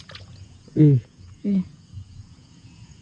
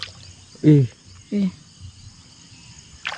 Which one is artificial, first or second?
first